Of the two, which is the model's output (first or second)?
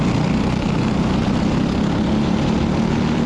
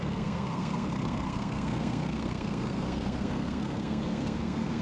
second